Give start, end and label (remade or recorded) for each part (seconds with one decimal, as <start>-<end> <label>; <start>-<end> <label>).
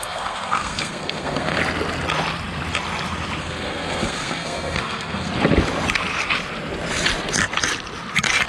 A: 0.0-1.6 remade; 1.6-3.4 recorded; 3.4-5.3 remade; 5.3-8.5 recorded